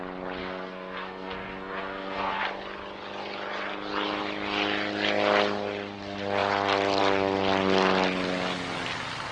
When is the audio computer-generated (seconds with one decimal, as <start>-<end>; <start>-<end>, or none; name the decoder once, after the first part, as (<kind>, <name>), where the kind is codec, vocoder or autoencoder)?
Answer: 0.4-2.4 (codec, SNAC)